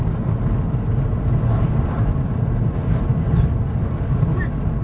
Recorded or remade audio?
recorded